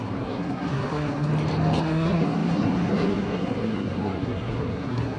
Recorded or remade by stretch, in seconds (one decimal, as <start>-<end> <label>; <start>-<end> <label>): 0.0-1.3 remade; 1.3-1.8 recorded; 1.8-5.2 remade